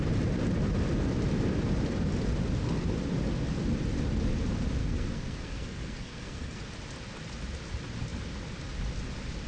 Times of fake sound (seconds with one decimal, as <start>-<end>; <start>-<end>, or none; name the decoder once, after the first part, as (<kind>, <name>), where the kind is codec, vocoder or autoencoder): 4.8-6.6 (codec, SNAC)